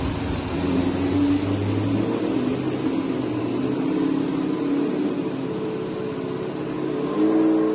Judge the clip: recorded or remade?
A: recorded